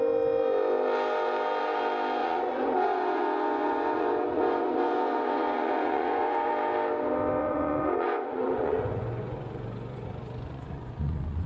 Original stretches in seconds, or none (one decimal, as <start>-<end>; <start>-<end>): 0.0-2.2; 6.5-7.4